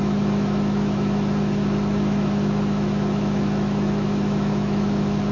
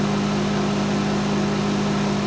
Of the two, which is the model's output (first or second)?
first